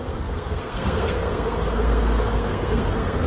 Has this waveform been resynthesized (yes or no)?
yes